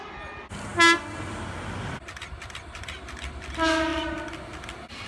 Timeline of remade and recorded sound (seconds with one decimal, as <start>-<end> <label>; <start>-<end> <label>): 0.0-5.1 recorded